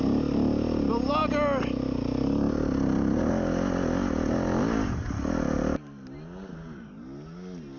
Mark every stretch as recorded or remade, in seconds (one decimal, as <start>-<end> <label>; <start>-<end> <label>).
0.0-7.8 recorded